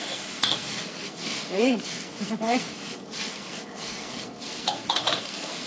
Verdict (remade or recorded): remade